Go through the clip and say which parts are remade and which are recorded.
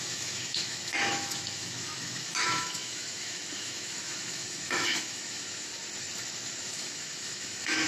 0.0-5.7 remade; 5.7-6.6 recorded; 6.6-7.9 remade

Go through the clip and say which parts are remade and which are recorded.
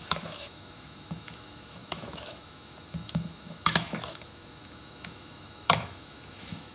0.0-6.7 remade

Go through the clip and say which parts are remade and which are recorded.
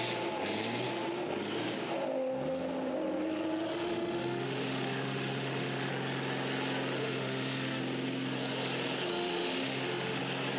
0.0-3.7 recorded; 3.7-5.9 remade; 5.9-7.0 recorded; 7.0-7.8 remade; 7.8-9.1 recorded; 9.1-10.2 remade; 10.2-10.6 recorded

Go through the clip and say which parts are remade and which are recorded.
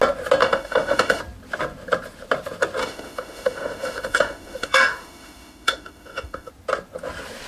0.0-0.4 recorded; 0.4-1.2 remade; 1.2-2.8 recorded; 2.8-6.5 remade; 6.5-7.5 recorded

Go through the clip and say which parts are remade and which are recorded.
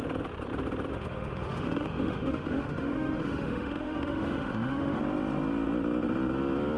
0.0-0.9 recorded; 0.9-5.0 remade; 5.0-6.8 recorded